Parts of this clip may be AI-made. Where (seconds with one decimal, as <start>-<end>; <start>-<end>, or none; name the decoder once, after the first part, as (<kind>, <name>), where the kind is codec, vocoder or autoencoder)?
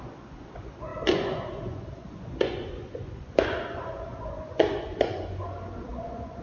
0.0-6.4 (vocoder, Vocos)